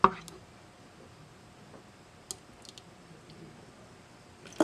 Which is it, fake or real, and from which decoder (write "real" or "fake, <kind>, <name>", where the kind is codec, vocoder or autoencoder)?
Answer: real